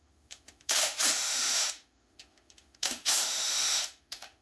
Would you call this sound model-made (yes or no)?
yes